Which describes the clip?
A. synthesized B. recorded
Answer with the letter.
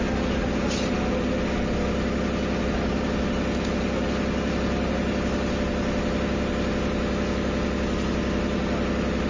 B